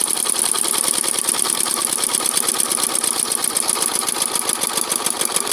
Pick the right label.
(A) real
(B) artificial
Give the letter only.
A